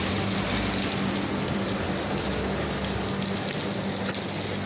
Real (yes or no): yes